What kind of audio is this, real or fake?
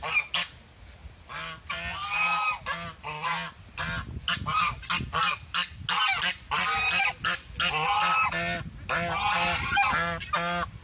real